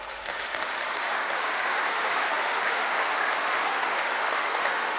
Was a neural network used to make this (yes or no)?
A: yes